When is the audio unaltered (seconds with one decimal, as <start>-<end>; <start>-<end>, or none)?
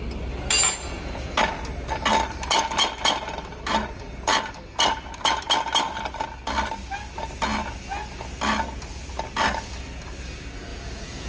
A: 0.0-0.6; 1.3-10.7